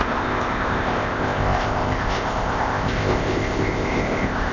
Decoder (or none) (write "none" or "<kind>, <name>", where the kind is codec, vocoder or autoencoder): codec, ZipCodec